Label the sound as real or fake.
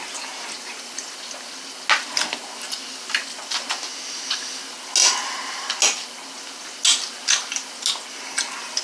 real